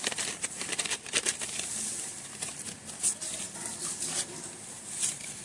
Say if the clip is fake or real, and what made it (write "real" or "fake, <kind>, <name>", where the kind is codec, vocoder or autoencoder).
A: fake, vocoder, BigVGAN v2